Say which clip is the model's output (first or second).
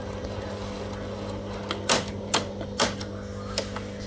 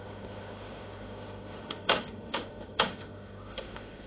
second